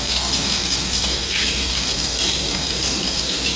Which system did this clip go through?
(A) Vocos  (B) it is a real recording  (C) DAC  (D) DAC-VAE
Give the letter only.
C